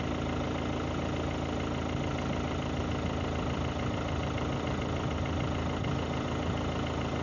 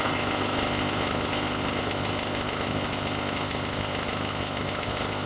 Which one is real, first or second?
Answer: first